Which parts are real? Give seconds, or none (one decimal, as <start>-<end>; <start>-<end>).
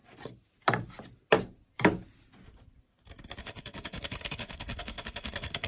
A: 0.0-3.4